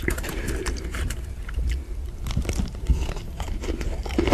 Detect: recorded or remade remade